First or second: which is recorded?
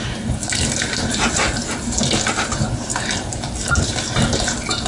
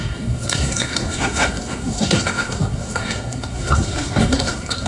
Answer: first